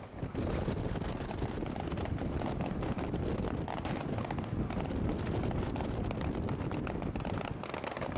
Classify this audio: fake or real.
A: real